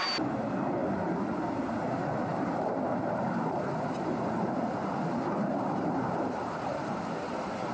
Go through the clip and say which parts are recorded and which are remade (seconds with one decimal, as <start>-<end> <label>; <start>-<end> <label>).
0.0-2.3 recorded; 2.3-6.9 remade; 6.9-7.7 recorded